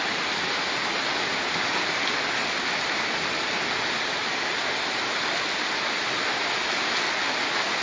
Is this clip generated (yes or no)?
no